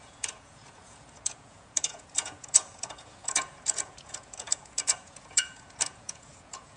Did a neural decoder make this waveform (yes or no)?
yes